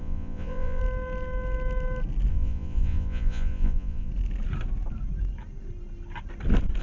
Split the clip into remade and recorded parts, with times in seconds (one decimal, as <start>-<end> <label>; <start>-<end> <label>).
0.0-0.8 remade; 0.8-2.3 recorded; 2.3-4.1 remade; 4.1-6.8 recorded